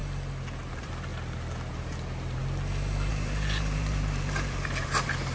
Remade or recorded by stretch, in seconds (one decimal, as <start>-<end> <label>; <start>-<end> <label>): 0.0-0.7 recorded; 0.7-1.1 remade; 1.1-1.7 recorded; 1.7-2.4 remade; 2.4-3.1 recorded; 3.1-5.3 remade